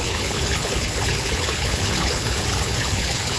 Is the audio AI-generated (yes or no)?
yes